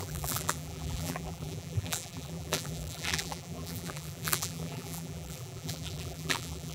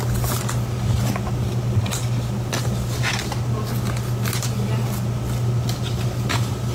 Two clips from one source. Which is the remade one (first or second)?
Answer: first